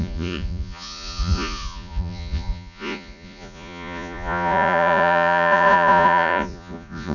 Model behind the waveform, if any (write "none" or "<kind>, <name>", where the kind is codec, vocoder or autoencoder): vocoder, Vocos